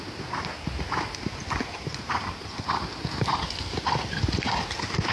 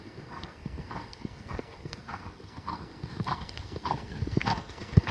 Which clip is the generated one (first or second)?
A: second